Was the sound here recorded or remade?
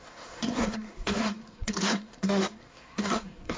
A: remade